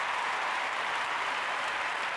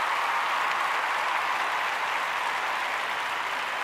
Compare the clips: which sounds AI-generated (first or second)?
first